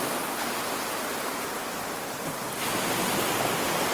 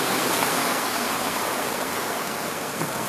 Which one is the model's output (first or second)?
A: second